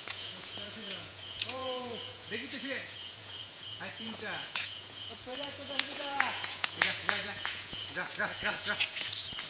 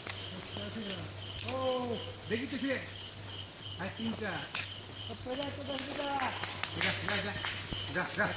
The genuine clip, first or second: second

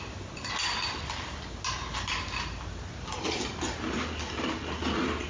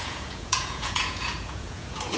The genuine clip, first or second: first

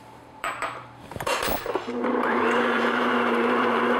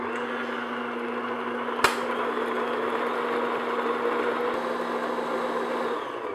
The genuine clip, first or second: second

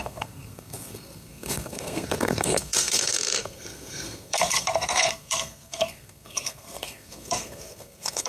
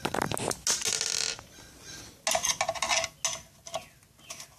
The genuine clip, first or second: second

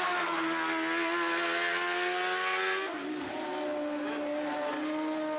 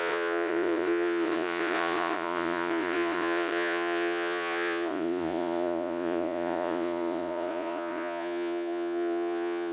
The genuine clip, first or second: first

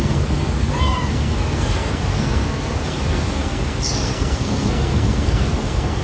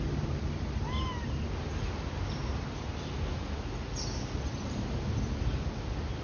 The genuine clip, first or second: second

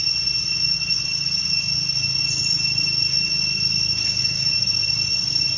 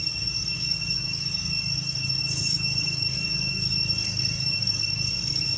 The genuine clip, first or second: first